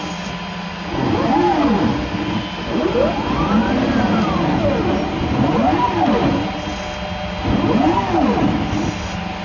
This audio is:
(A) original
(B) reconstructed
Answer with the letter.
A